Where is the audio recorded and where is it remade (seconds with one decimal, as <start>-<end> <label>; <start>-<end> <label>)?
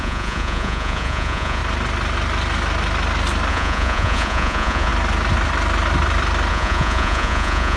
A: 0.0-1.6 remade; 1.6-3.5 recorded; 3.5-4.9 remade; 4.9-6.5 recorded; 6.5-7.8 remade